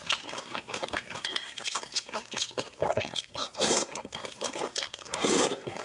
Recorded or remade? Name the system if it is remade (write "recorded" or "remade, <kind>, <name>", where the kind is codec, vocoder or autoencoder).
remade, codec, SNAC